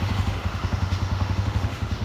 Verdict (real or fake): fake